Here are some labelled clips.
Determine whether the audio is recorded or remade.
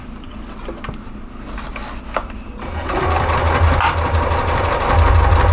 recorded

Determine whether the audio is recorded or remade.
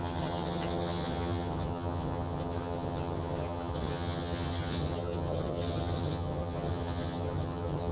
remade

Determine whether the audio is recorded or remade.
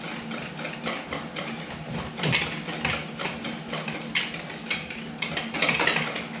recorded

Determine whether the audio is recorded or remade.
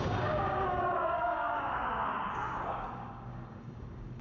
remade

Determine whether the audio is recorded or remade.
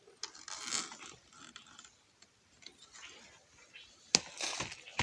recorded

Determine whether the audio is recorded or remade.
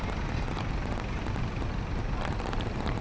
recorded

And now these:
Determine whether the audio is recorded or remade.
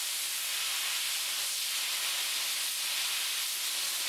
recorded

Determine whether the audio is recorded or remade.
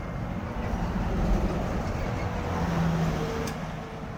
recorded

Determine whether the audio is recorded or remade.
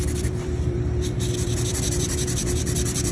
remade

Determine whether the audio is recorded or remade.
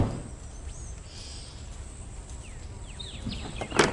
recorded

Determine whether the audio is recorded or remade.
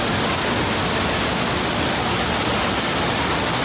recorded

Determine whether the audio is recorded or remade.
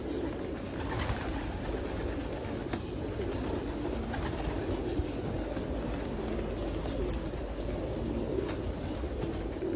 recorded